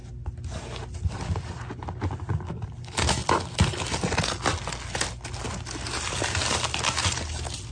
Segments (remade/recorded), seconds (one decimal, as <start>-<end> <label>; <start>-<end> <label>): 0.0-7.7 recorded